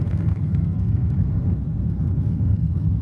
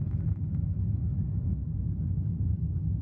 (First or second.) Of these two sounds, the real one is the second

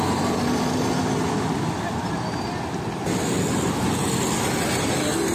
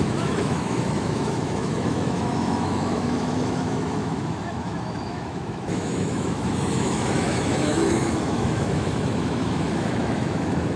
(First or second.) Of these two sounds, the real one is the first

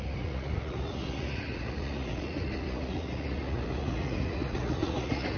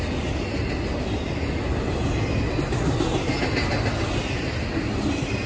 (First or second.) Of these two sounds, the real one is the second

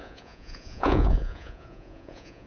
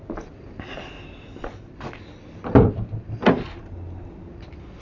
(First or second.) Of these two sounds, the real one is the second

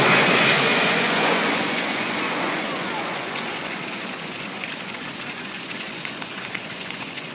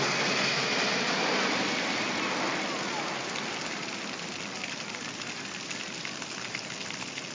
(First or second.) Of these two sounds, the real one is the second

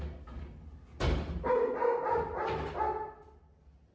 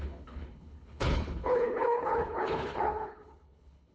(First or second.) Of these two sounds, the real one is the first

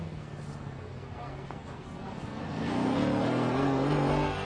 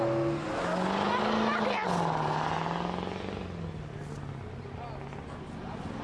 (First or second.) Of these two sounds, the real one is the second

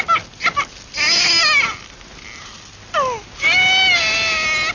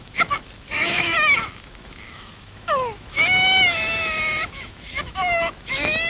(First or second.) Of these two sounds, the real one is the first